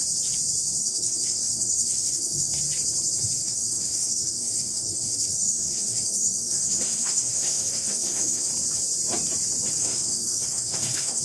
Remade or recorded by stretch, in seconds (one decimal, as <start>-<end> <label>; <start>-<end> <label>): 0.0-0.8 recorded; 0.8-2.5 remade; 2.5-3.4 recorded; 3.4-8.5 remade; 8.5-9.8 recorded; 9.8-11.2 remade